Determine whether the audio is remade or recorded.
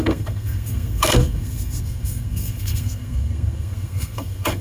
remade